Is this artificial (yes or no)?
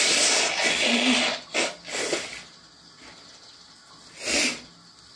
no